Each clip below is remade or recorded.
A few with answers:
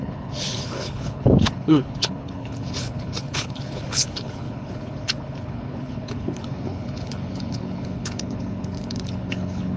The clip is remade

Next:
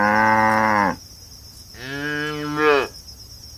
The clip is recorded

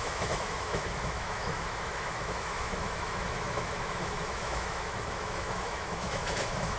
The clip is remade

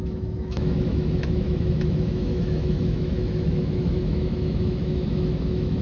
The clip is remade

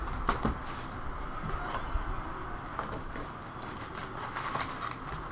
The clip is recorded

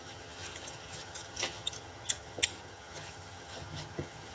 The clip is remade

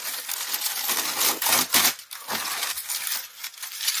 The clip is recorded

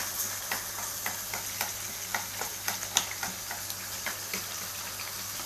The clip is recorded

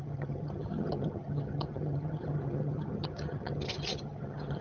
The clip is remade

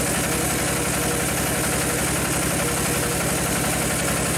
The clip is recorded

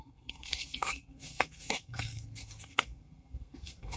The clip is remade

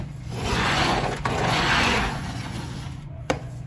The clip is remade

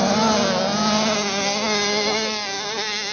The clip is recorded